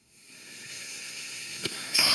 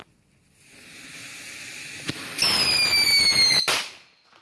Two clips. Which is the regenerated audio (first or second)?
first